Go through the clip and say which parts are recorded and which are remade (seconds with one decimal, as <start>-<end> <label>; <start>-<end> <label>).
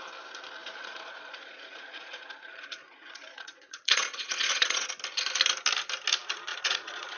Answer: 0.0-0.6 recorded; 0.6-4.9 remade; 4.9-6.5 recorded; 6.5-7.2 remade